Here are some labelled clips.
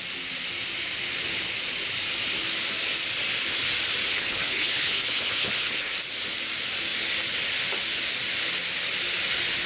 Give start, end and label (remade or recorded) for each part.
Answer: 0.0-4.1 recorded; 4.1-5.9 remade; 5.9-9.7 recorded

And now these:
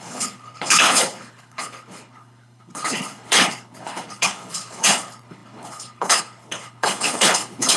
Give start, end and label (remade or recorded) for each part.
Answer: 0.0-7.8 remade

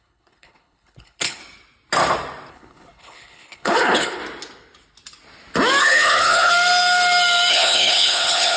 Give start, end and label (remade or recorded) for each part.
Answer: 0.0-1.4 remade; 1.4-2.5 recorded; 2.5-4.2 remade; 4.2-5.8 recorded; 5.8-6.5 remade; 6.5-7.5 recorded; 7.5-8.6 remade